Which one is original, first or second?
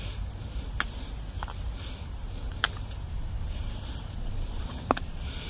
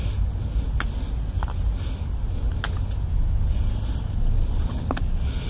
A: second